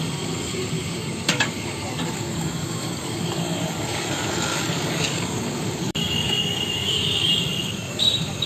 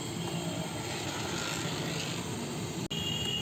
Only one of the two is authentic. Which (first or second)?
second